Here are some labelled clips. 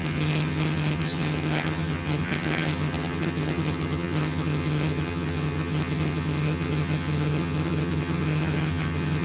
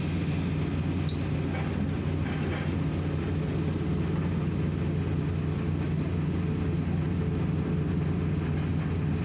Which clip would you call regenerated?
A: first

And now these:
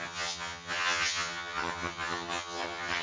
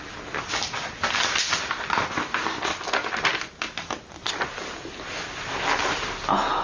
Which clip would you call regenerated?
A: first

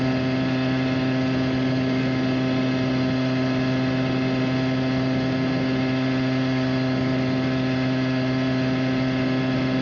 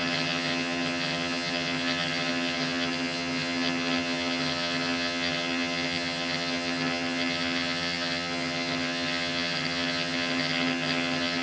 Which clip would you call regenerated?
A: second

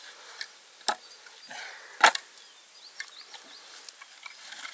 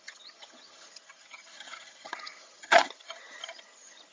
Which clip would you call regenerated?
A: second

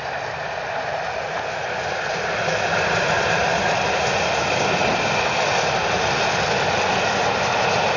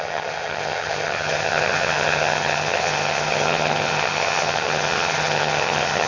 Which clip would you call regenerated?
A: second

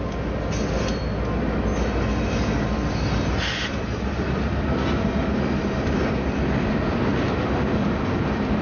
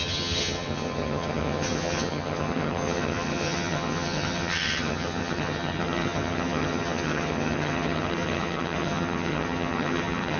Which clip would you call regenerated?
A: second